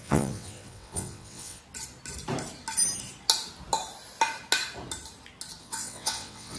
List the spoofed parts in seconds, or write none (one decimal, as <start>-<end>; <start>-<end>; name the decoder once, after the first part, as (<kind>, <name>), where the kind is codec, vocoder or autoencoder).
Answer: 0.0-1.6 (vocoder, WaveNeXt); 5.6-6.6

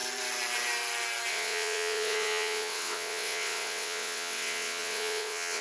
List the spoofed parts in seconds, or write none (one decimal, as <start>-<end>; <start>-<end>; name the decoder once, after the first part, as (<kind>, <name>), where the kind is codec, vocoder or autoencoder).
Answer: 1.3-5.6 (vocoder, WaveNeXt)